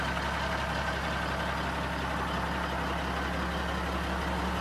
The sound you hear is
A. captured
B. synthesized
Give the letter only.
A